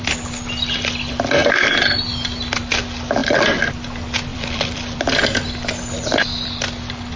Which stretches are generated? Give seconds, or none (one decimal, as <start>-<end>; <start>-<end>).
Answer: 3.2-3.7; 4.3-5.0